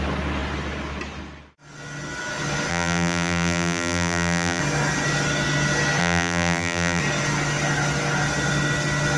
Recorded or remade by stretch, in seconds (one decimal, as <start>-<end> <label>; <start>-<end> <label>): 0.0-2.7 recorded; 2.7-4.6 remade; 4.6-6.0 recorded; 6.0-7.0 remade; 7.0-9.2 recorded